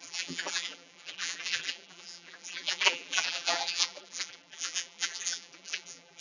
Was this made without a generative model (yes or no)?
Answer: no